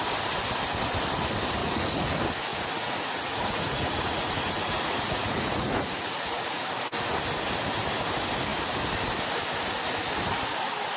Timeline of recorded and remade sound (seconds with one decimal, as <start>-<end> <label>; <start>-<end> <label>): 0.0-1.6 recorded; 1.6-2.1 remade; 2.1-2.5 recorded; 2.5-6.6 remade; 6.6-11.0 recorded